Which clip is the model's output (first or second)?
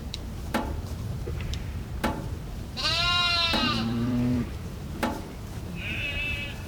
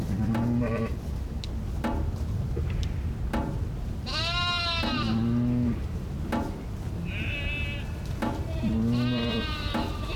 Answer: first